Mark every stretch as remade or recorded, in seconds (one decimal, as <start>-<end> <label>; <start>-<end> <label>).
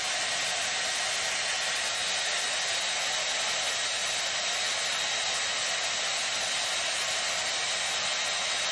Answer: 0.0-8.7 recorded